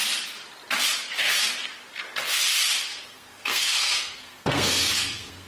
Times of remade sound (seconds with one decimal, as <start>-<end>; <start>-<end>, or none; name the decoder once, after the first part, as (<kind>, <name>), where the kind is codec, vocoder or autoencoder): 2.9-5.5 (codec, SNAC)